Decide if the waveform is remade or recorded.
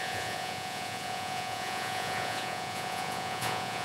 remade